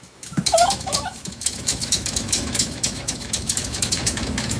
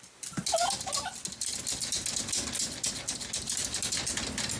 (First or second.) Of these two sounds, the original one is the second